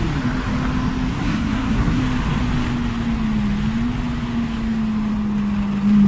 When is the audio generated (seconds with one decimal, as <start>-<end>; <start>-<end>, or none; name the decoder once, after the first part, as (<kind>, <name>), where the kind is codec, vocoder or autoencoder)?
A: 1.1-2.0 (codec, SNAC)